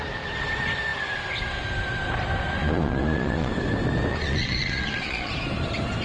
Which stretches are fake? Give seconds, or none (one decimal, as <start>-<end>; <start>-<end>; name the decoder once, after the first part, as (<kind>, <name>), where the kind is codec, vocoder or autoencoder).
2.6-3.5 (vocoder, Vocos); 4.1-5.3